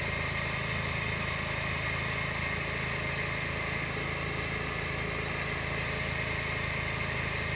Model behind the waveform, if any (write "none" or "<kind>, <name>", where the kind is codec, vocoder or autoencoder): none